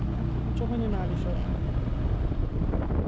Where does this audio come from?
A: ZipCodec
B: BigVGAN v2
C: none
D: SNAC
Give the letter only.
C